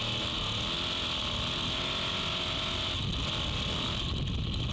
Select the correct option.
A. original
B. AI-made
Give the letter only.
A